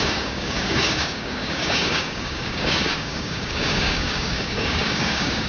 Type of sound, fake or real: fake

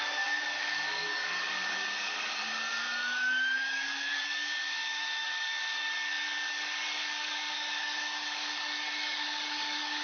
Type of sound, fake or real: fake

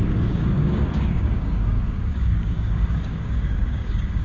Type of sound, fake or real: fake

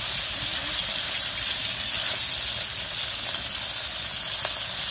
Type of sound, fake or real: real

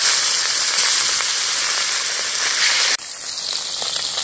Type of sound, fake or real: real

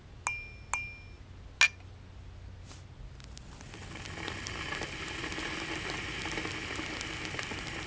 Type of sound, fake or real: real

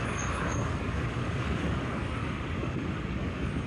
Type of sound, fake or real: fake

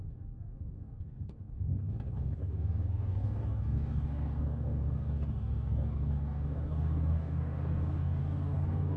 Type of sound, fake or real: fake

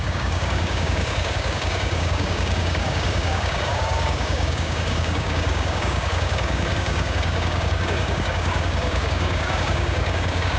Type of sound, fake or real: fake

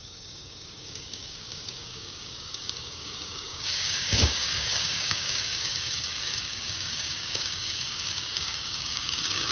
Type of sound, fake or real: fake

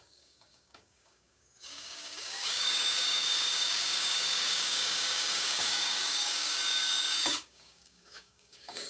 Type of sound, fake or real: fake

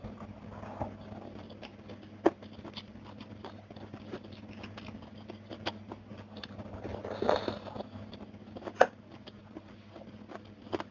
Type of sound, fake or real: real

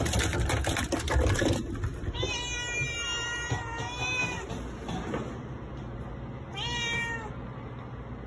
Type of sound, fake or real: real